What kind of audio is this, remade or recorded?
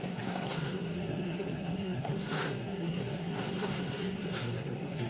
remade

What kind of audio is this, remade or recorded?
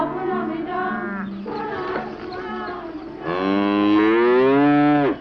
recorded